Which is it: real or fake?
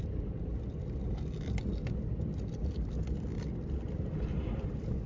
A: real